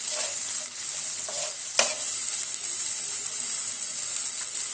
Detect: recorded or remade recorded